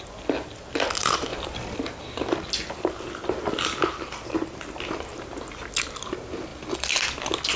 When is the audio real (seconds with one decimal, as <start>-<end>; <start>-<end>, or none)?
0.0-1.3; 1.8-7.6